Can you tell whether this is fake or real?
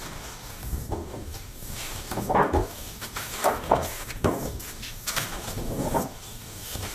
fake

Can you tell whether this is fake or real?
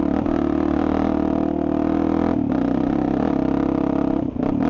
real